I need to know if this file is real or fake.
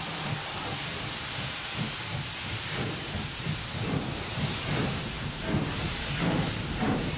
fake